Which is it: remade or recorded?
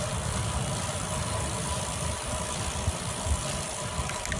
recorded